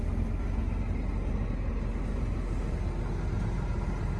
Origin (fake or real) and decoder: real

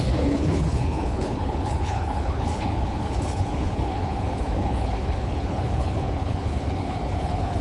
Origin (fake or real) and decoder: fake, codec, HILCodec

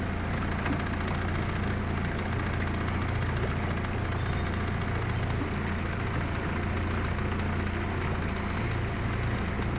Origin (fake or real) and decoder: real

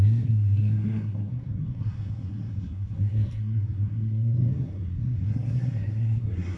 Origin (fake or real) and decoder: fake, codec, SNAC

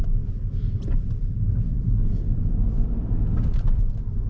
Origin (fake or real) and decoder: real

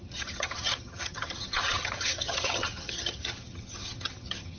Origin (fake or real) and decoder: fake, vocoder, HiFi-GAN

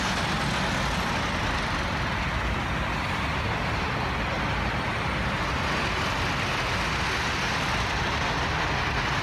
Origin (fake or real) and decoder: real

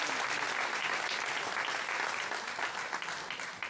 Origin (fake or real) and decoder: real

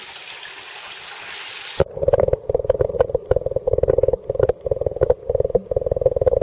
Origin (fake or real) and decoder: real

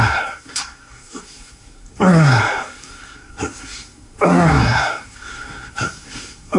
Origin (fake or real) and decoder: fake, codec, SNAC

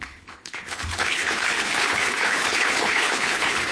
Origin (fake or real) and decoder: fake, codec, HILCodec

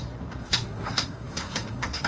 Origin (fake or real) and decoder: fake, codec, SNAC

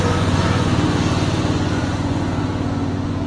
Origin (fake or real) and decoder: fake, vocoder, Vocos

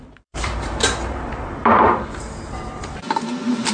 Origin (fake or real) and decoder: fake, vocoder, BigVGAN v2